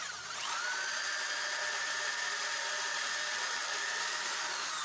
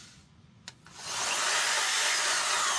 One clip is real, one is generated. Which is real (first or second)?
first